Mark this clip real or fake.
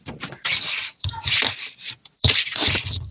fake